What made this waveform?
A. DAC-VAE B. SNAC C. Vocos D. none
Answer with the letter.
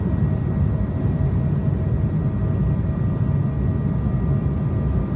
D